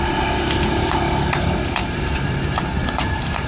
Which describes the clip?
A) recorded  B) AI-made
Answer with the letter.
B